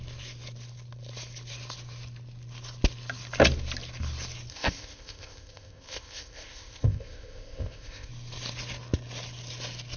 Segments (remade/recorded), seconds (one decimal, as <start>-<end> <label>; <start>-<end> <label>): 0.0-4.5 recorded; 4.5-8.1 remade; 8.1-10.0 recorded